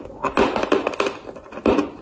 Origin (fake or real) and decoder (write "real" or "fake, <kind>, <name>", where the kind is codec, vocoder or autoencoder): real